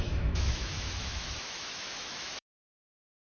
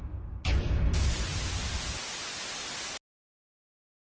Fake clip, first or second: first